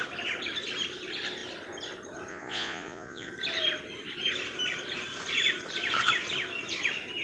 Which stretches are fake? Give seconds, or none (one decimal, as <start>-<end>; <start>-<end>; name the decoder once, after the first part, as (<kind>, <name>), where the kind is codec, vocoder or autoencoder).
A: 2.3-3.3 (vocoder, Vocos)